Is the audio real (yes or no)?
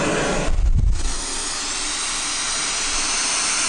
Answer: yes